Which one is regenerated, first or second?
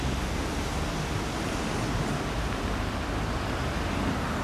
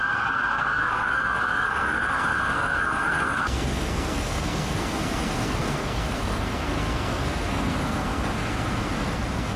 second